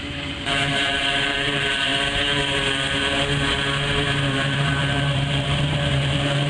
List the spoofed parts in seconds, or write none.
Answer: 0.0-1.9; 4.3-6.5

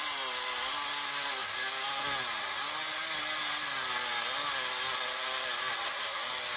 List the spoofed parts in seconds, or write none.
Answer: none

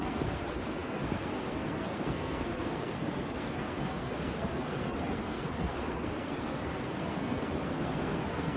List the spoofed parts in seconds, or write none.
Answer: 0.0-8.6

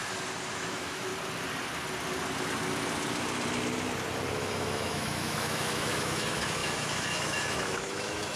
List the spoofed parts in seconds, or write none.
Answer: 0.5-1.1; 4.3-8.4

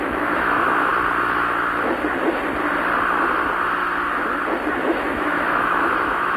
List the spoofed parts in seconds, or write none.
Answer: 0.0-0.9; 4.7-6.4

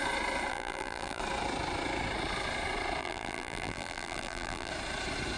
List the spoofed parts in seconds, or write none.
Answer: 0.5-1.2; 3.0-4.7

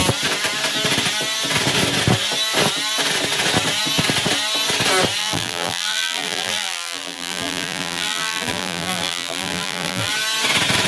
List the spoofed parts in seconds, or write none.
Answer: 5.2-10.1